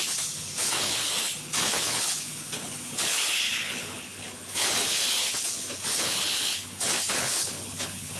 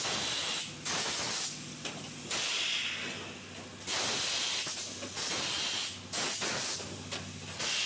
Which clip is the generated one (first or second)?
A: first